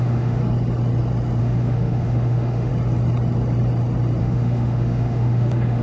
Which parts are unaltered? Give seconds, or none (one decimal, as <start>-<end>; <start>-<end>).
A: 0.4-1.4; 2.7-4.2